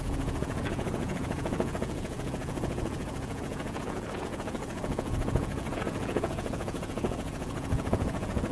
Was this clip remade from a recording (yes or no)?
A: yes